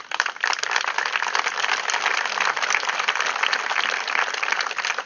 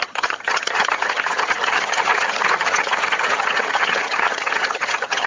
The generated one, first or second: second